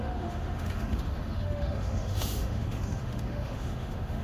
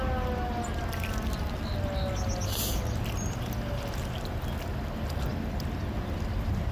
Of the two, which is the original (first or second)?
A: second